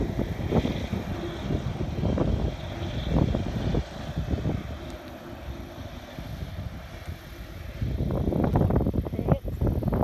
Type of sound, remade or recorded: recorded